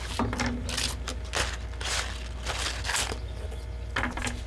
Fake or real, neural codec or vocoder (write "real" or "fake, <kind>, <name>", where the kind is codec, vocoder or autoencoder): real